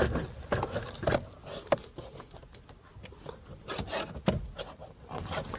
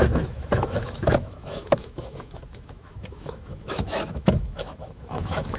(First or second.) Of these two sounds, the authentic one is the first